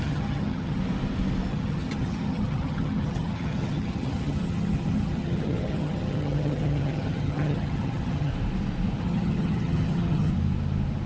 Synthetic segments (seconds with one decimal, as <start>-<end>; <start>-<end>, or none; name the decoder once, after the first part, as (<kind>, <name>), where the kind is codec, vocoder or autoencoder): 0.0-0.8 (vocoder, HiFi-GAN); 1.5-8.3; 9.0-10.3